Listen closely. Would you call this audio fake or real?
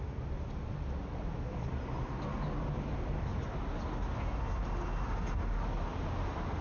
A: real